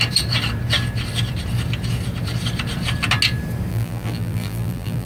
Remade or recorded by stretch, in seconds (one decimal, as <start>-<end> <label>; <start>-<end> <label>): 0.0-3.7 recorded; 3.7-5.1 remade